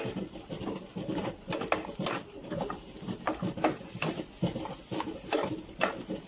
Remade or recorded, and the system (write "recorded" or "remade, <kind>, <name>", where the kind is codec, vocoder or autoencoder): recorded